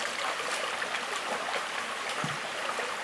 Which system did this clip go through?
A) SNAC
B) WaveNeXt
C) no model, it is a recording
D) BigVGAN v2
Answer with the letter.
C